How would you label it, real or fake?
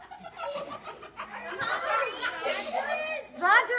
real